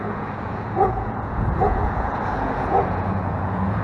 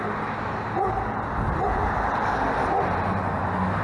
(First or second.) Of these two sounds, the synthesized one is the first